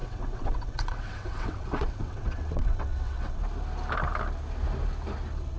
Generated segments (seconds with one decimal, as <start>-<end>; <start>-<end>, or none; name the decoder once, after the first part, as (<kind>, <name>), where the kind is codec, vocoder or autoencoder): 0.0-3.4 (vocoder, WaveNeXt)